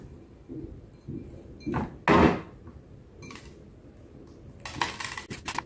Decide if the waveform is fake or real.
real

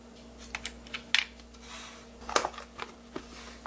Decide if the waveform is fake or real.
real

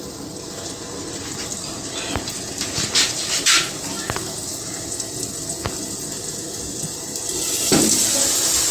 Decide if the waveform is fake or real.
real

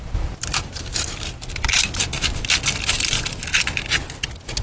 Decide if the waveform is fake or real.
real